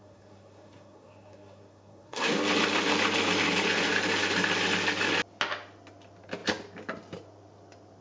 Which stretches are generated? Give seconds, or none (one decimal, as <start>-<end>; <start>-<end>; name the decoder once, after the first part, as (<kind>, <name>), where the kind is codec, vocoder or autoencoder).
0.0-2.4 (codec, SNAC)